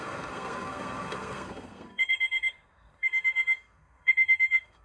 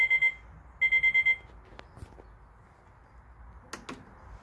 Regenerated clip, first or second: first